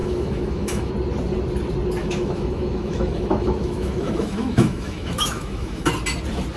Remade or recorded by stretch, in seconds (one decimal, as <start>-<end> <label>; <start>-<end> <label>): 0.0-0.9 remade; 0.9-2.0 recorded; 2.0-5.9 remade; 5.9-6.6 recorded